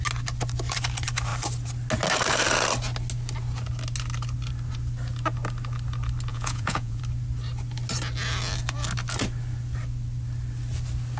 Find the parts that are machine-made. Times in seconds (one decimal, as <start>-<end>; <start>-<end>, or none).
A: 6.3-7.0